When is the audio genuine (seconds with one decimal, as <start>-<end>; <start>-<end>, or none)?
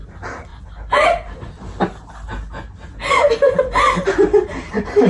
0.0-5.1